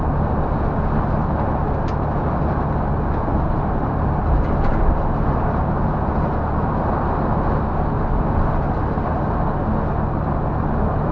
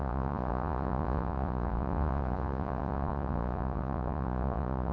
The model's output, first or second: second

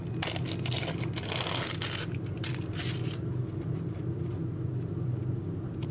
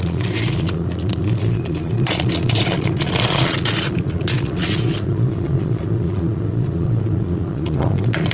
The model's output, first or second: second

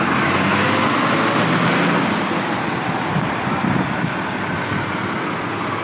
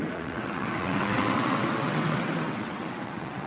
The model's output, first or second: second